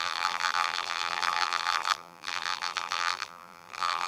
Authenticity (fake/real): fake